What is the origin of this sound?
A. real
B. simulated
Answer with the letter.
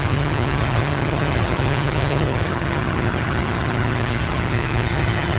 B